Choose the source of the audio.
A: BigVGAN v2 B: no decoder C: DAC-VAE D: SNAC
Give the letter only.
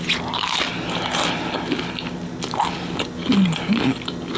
B